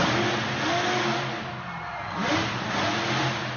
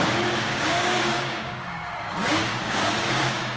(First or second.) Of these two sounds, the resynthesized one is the second